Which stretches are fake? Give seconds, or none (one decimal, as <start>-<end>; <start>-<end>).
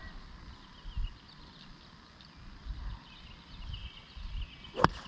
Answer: 2.6-4.0